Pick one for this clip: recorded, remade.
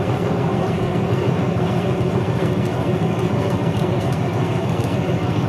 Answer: remade